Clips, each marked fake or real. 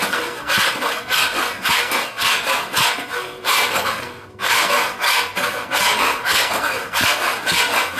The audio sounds fake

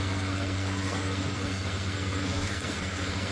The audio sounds fake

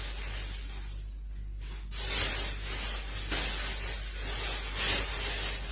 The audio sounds real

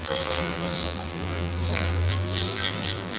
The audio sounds fake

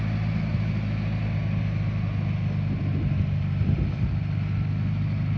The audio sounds real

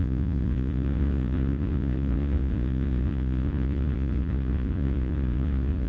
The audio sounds fake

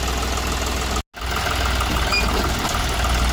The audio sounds real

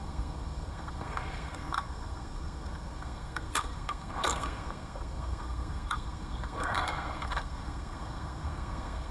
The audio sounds fake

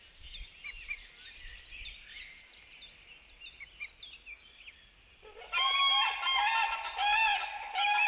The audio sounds real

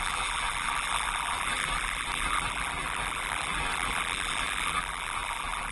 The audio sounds fake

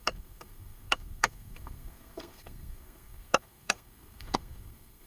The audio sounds fake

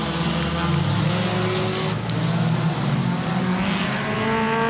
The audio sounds real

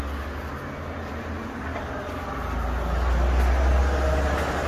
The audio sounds real